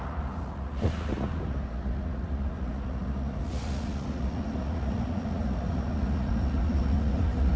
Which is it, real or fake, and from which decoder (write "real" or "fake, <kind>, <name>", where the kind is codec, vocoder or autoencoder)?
fake, vocoder, Vocos